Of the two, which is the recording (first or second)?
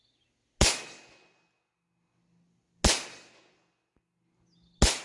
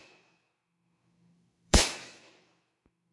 first